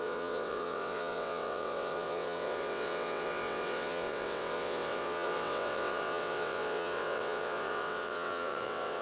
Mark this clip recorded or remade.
remade